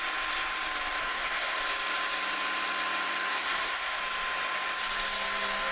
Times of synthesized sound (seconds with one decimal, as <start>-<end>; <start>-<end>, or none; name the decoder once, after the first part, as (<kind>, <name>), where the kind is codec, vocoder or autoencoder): 1.0-1.6 (codec, SNAC); 3.3-4.0